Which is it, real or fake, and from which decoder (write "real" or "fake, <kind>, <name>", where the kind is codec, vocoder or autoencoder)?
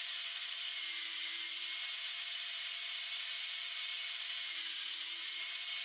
fake, vocoder, BigVGAN v2